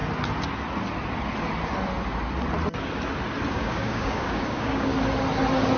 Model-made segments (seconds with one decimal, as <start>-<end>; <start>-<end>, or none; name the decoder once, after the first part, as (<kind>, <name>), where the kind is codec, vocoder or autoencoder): 3.5-4.9 (codec, DAC)